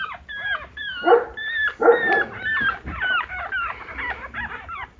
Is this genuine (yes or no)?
yes